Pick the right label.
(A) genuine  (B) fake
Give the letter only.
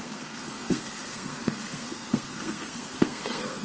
B